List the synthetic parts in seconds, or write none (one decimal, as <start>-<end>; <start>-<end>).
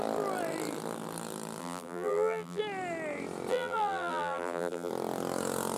1.6-2.6; 3.5-4.9